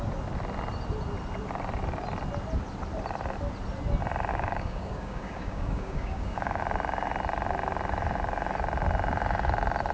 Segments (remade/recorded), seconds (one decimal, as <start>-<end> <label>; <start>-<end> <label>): 0.0-4.3 recorded; 4.3-6.6 remade; 6.6-9.9 recorded